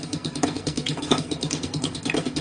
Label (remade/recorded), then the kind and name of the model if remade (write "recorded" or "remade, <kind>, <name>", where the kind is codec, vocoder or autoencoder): remade, codec, SNAC